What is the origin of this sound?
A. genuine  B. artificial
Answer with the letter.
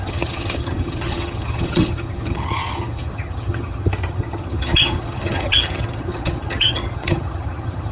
B